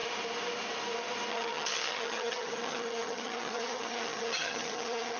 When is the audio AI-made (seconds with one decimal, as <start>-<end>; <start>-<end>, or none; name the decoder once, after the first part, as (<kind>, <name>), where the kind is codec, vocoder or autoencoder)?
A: 1.3-5.2 (vocoder, HiFi-GAN)